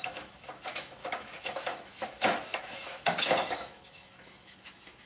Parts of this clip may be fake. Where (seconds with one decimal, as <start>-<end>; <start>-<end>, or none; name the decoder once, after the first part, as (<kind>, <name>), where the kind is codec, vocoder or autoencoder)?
0.0-5.1 (autoencoder, DAC-VAE)